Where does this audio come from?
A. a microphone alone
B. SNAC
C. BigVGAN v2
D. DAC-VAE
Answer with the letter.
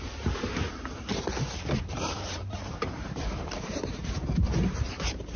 C